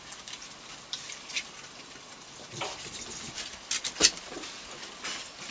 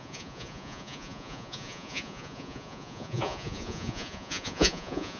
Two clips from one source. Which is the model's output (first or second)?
second